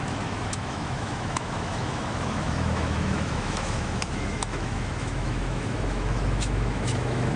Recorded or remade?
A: remade